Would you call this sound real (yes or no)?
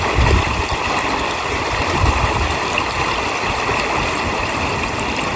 yes